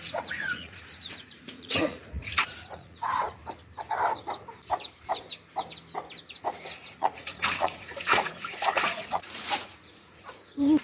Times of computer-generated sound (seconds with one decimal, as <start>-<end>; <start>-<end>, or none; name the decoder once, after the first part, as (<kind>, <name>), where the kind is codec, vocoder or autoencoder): 0.0-3.4 (vocoder, Vocos); 6.8-10.8